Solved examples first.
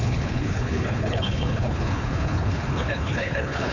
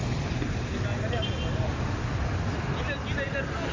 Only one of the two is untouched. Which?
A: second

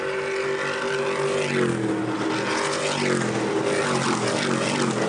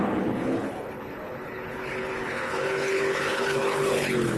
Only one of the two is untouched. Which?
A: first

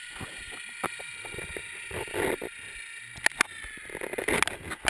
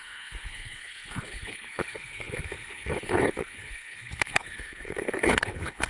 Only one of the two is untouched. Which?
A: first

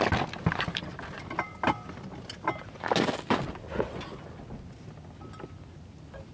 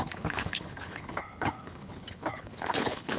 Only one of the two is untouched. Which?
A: first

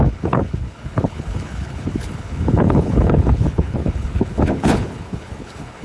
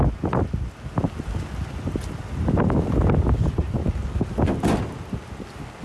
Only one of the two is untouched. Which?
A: second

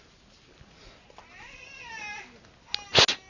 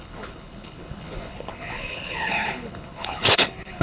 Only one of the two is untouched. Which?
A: first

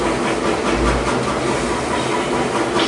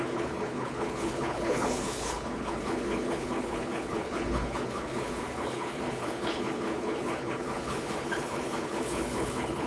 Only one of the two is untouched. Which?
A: first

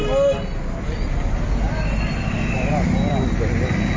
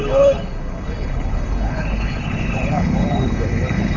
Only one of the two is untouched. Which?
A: first